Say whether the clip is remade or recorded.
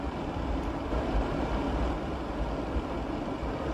recorded